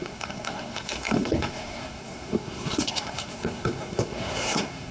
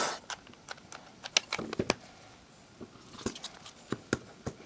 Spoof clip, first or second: first